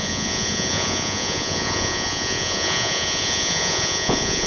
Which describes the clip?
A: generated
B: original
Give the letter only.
A